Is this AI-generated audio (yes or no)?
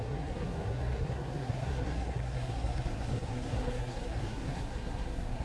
yes